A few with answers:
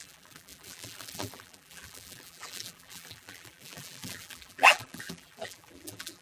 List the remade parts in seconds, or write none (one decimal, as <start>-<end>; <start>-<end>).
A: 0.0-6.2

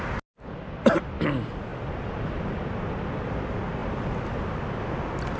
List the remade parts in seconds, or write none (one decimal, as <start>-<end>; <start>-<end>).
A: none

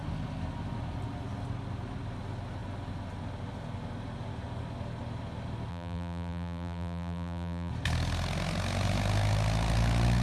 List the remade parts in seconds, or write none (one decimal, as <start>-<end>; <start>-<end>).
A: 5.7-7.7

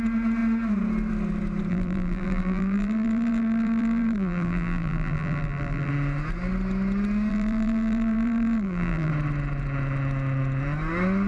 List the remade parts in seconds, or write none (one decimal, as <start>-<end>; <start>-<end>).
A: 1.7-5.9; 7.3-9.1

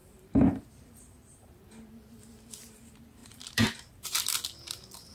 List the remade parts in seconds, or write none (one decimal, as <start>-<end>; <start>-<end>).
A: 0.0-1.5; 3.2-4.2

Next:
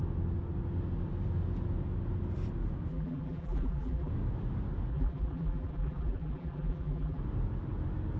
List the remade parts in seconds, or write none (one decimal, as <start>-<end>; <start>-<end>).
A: 2.9-4.1; 4.9-7.2

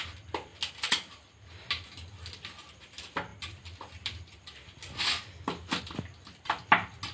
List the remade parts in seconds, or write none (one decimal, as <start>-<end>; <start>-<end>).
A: none